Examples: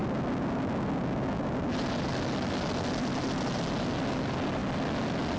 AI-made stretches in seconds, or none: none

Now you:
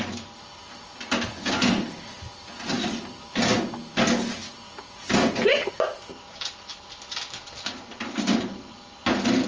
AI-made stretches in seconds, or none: none

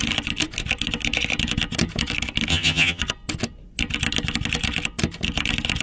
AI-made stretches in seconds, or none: 2.5-3.0 (vocoder, HiFi-GAN)

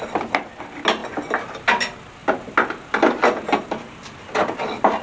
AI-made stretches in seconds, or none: none